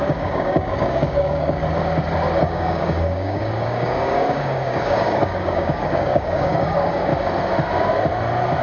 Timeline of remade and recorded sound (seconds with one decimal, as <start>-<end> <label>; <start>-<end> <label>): 0.0-1.6 remade; 1.6-2.4 recorded; 2.4-7.1 remade; 7.1-8.6 recorded

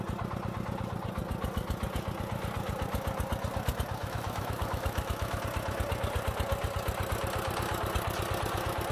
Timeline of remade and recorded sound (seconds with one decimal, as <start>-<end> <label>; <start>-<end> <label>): 0.0-4.0 recorded; 4.0-5.4 remade; 5.4-8.9 recorded

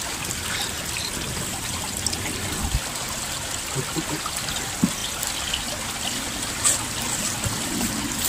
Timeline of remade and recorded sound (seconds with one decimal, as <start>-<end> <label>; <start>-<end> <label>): 0.0-8.3 recorded

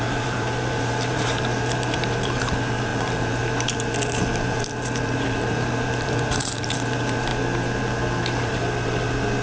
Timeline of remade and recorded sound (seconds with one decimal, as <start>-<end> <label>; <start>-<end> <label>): 0.0-7.3 remade; 7.3-8.2 recorded; 8.2-9.4 remade

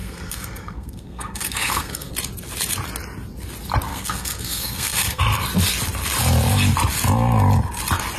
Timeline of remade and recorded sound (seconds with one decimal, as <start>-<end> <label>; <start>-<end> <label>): 0.0-2.1 remade; 2.1-3.9 recorded; 3.9-5.2 remade; 5.2-8.2 recorded

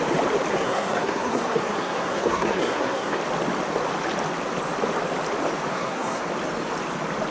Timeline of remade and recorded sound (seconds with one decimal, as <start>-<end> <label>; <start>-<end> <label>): 0.0-0.5 recorded; 0.5-3.2 remade; 3.2-5.7 recorded; 5.7-6.2 remade; 6.2-7.3 recorded